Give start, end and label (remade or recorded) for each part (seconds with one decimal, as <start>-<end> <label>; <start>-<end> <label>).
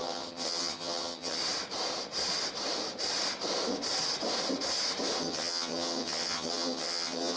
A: 0.0-1.4 remade; 1.4-5.2 recorded; 5.2-7.4 remade